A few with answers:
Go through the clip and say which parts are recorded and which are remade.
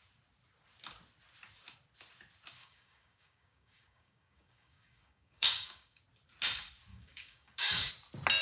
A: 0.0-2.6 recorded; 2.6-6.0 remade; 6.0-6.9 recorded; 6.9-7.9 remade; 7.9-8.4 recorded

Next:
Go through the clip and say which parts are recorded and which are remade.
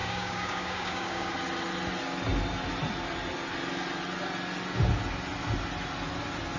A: 0.0-1.3 remade; 1.3-6.6 recorded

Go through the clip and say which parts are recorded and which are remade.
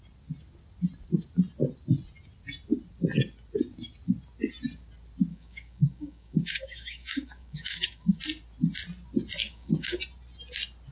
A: 0.0-5.3 recorded; 5.3-8.2 remade; 8.2-9.4 recorded; 9.4-10.0 remade; 10.0-10.9 recorded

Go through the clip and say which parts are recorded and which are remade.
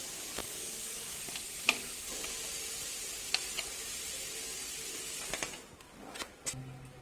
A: 0.0-0.4 recorded; 0.4-1.2 remade; 1.2-7.0 recorded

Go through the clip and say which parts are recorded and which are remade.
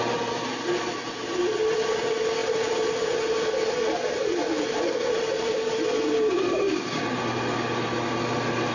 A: 0.0-6.5 recorded; 6.5-7.0 remade; 7.0-8.7 recorded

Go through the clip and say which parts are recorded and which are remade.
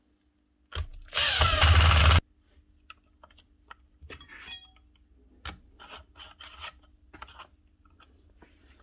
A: 0.0-8.8 recorded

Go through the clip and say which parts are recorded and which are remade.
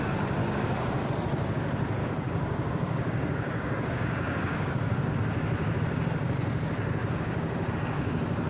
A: 0.0-0.4 recorded; 0.4-1.0 remade; 1.0-2.0 recorded; 2.0-5.1 remade; 5.1-7.0 recorded; 7.0-7.7 remade; 7.7-8.5 recorded